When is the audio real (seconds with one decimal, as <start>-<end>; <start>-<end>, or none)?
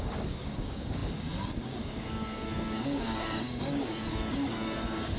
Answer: none